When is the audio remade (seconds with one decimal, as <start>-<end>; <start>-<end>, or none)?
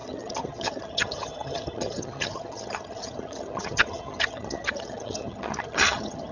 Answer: 0.0-6.3